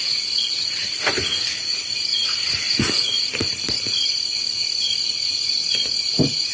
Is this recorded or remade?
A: recorded